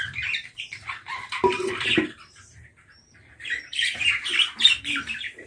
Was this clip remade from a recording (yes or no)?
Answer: yes